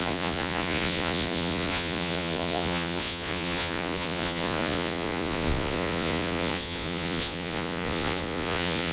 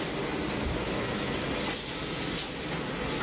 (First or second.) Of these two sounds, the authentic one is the second